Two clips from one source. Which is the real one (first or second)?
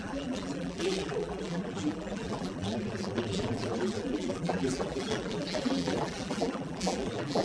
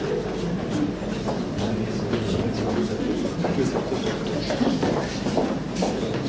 second